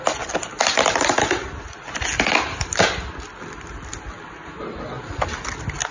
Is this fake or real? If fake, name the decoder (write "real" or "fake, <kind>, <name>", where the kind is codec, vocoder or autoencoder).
real